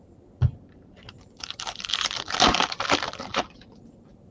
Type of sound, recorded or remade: recorded